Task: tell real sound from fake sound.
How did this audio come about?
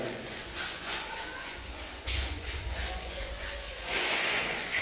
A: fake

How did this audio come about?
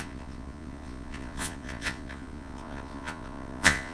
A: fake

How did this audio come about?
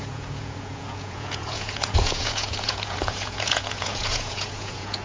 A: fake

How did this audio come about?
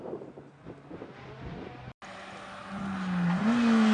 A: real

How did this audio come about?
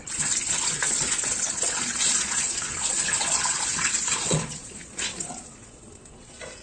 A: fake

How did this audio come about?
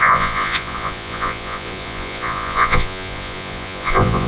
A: fake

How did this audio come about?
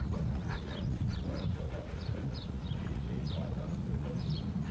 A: fake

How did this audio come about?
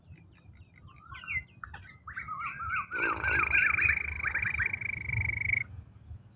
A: real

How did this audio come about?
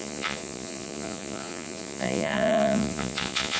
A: fake